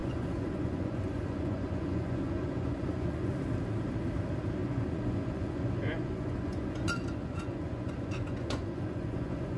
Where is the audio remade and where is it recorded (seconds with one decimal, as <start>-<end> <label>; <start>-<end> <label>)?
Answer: 0.0-3.3 remade; 3.3-4.6 recorded; 4.6-9.6 remade